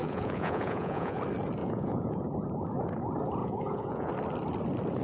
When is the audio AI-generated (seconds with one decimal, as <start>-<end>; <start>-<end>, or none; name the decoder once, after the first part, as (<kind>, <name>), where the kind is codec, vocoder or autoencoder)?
0.0-1.2 (vocoder, Vocos); 1.6-2.2; 3.4-4.1